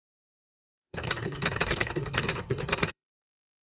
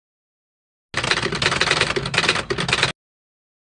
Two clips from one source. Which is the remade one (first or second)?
first